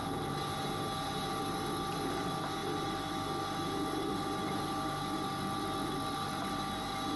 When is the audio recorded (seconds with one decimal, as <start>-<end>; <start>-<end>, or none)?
0.0-7.2